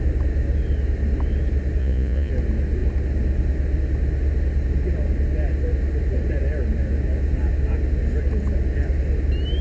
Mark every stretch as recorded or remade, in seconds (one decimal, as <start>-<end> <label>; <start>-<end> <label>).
0.0-1.8 recorded; 1.8-2.3 remade; 2.3-9.6 recorded